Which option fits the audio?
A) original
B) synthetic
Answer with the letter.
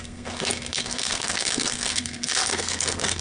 B